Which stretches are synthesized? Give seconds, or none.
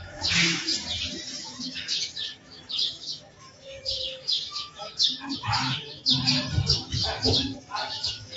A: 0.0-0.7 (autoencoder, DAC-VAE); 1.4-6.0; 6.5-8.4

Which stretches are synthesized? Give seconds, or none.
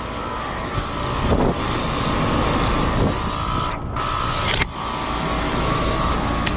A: 5.5-6.6 (autoencoder, DAC-VAE)